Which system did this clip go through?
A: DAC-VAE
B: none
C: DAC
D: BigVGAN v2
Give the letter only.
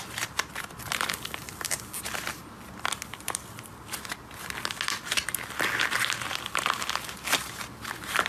B